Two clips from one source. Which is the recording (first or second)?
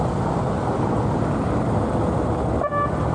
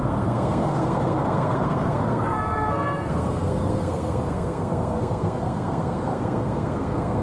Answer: first